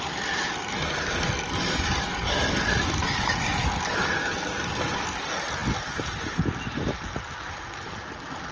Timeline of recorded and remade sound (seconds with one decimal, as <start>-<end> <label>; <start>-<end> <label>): 0.0-8.5 recorded